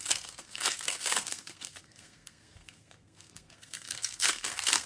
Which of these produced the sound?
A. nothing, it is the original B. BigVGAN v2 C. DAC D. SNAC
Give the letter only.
D